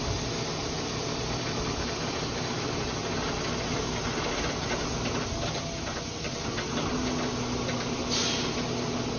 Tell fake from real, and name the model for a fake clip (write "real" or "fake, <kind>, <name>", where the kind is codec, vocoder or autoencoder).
real